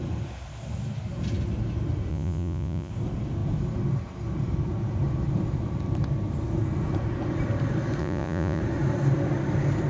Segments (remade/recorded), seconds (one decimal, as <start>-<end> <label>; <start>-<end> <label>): 0.0-2.1 recorded; 2.1-2.9 remade; 2.9-8.0 recorded; 8.0-8.6 remade; 8.6-9.9 recorded